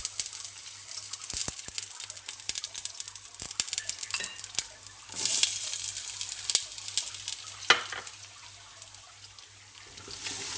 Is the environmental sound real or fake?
real